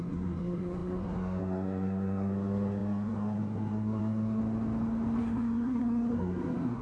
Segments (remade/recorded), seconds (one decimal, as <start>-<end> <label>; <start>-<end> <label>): 0.0-4.4 remade; 4.4-5.2 recorded; 5.2-6.8 remade